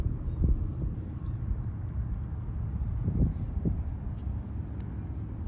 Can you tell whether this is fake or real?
real